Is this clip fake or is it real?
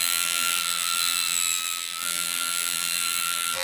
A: fake